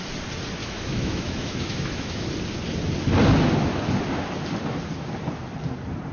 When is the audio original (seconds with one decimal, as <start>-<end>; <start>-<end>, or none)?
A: 0.0-0.6; 2.3-6.1